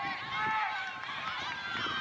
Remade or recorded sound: recorded